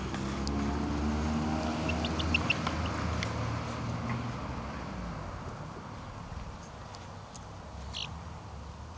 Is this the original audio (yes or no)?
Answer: yes